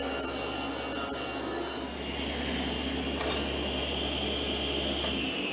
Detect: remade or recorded recorded